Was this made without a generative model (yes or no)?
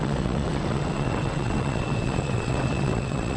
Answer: no